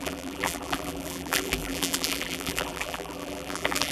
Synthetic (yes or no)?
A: yes